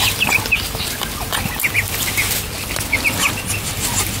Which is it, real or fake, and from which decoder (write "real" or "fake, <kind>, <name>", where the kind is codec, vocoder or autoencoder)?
real